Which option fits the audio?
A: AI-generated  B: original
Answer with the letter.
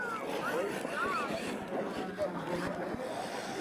B